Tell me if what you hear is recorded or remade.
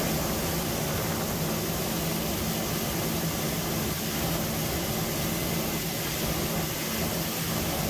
recorded